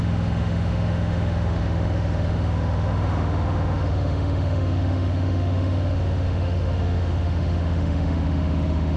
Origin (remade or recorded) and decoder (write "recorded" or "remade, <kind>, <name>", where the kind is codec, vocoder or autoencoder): remade, autoencoder, DAC-VAE